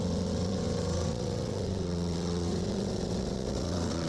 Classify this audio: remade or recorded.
remade